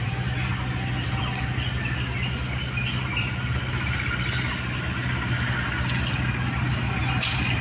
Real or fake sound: real